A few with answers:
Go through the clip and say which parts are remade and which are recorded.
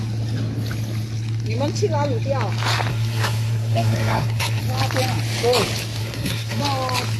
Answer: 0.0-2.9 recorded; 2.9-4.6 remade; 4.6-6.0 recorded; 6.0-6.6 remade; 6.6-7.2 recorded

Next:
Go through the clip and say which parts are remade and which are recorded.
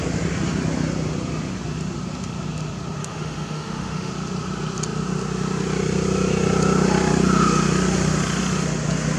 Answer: 0.0-3.0 recorded; 3.0-4.1 remade; 4.1-9.2 recorded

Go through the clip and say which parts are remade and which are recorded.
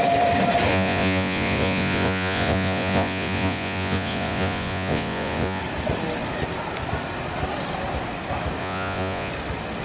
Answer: 0.0-0.7 recorded; 0.7-5.6 remade; 5.6-8.6 recorded; 8.6-9.3 remade; 9.3-9.8 recorded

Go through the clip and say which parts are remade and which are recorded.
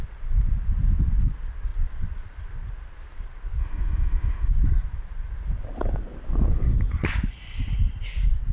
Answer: 0.0-3.6 recorded; 3.6-4.5 remade; 4.5-8.5 recorded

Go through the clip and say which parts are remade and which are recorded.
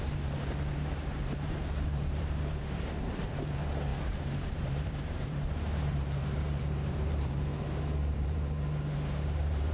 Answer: 0.0-7.5 remade; 7.5-8.1 recorded; 8.1-9.7 remade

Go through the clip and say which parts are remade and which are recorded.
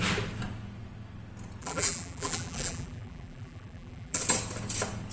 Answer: 0.0-1.6 recorded; 1.6-4.2 remade; 4.2-5.1 recorded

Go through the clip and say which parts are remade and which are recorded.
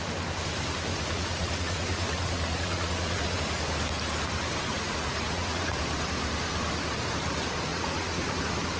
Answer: 0.0-0.9 recorded; 0.9-3.4 remade; 3.4-4.7 recorded; 4.7-5.8 remade; 5.8-7.7 recorded; 7.7-8.4 remade; 8.4-8.8 recorded